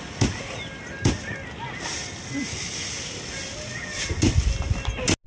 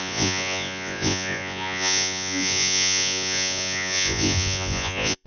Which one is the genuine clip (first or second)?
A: first